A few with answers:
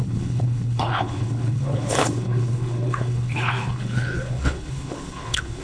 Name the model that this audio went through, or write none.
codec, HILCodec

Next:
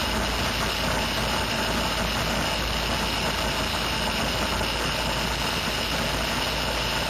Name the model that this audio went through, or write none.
none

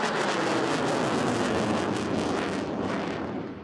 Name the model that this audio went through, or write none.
none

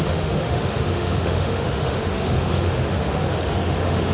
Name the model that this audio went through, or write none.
autoencoder, DAC-VAE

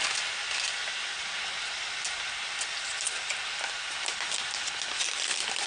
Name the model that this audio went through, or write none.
none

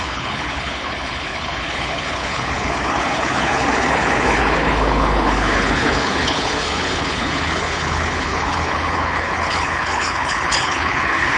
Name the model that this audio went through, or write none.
codec, HILCodec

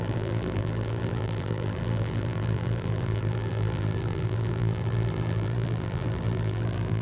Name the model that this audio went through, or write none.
vocoder, BigVGAN v2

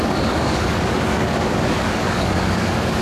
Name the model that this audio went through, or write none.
codec, DAC